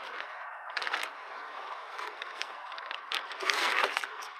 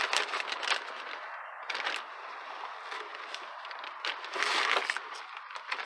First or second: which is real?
second